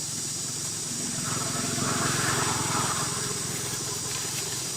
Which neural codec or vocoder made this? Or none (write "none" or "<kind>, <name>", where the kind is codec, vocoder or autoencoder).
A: vocoder, BigVGAN v2